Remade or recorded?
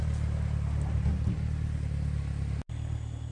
recorded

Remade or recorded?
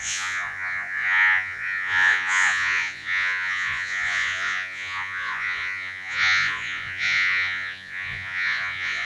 remade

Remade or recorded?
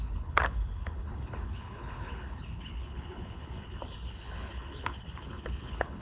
remade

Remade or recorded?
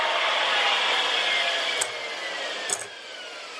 recorded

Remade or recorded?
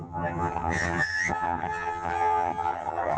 remade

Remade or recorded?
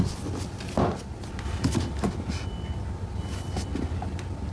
recorded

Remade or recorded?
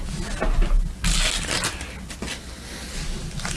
recorded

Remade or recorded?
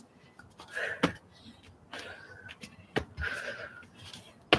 recorded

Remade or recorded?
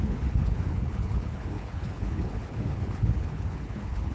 remade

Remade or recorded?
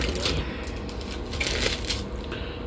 recorded